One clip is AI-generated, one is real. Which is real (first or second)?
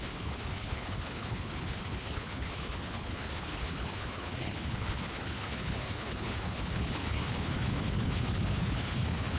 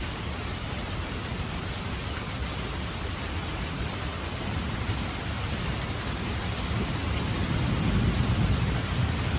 second